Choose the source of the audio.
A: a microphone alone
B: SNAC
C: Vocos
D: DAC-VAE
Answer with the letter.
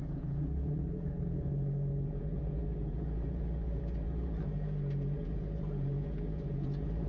C